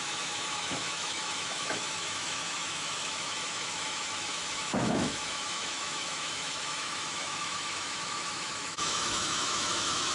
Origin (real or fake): fake